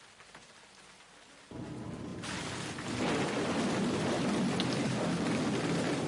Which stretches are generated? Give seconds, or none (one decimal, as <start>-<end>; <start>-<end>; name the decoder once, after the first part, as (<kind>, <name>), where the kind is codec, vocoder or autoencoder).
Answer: none